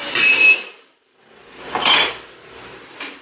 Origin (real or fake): fake